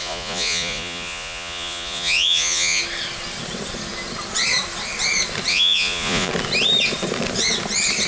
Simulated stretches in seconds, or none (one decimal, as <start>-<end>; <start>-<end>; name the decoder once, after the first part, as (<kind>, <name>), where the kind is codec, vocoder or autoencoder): 0.0-2.8 (vocoder, Vocos); 5.5-6.3